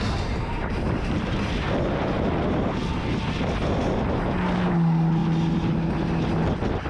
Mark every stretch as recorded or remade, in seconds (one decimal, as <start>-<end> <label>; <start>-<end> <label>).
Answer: 0.0-6.9 recorded